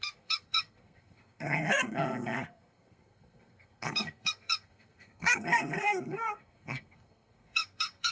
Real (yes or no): no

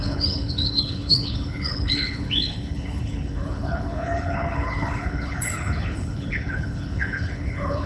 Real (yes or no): no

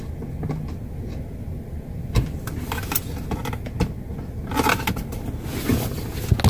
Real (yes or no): yes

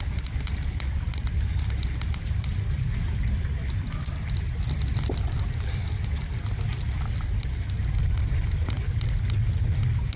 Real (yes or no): yes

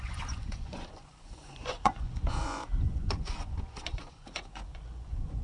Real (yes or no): no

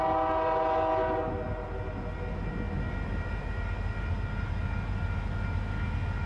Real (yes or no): yes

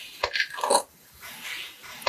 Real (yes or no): yes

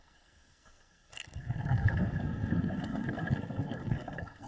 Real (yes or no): no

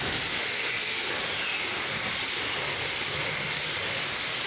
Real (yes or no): yes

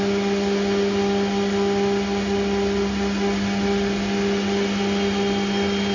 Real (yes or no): yes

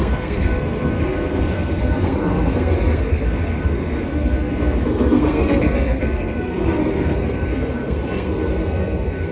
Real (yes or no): no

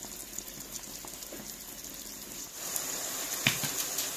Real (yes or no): yes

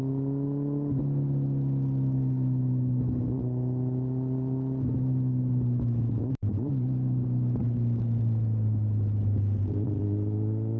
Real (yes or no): yes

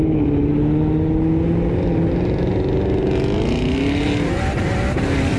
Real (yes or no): yes